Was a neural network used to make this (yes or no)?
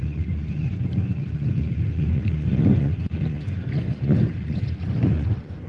yes